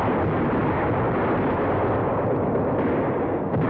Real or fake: real